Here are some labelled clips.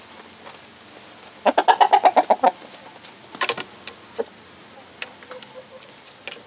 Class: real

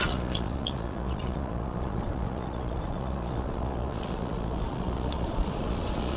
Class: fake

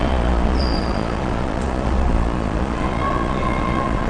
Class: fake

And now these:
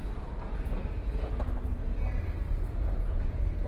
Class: fake